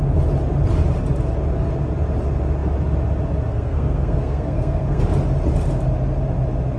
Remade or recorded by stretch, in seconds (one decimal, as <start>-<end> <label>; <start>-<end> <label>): 0.0-3.5 recorded; 3.5-5.0 remade; 5.0-6.8 recorded